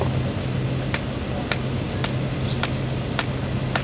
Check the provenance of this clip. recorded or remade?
recorded